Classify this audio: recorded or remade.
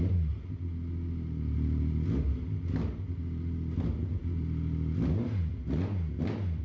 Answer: recorded